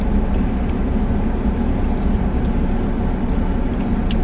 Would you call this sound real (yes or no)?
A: yes